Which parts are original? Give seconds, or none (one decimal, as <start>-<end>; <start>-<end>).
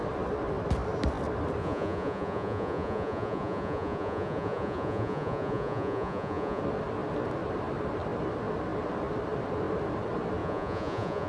0.0-1.6; 6.6-10.4